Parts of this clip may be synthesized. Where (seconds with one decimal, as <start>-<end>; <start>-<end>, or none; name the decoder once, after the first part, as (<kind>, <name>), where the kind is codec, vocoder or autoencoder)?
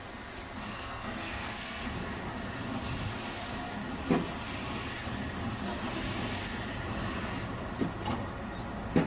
0.7-1.8 (codec, SNAC)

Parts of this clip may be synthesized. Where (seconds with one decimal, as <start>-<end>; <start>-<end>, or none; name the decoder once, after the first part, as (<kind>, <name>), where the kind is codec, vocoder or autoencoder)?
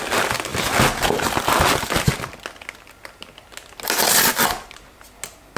none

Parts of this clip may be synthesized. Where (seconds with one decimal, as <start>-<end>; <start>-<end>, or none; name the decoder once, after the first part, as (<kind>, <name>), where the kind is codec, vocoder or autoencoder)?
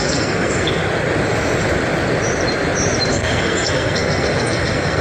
0.0-0.8 (codec, SNAC); 3.1-5.0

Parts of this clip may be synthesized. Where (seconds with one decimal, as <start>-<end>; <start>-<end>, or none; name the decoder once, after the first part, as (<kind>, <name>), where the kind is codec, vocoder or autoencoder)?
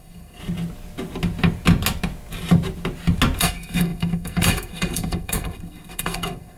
0.0-0.4 (codec, SNAC); 3.4-6.6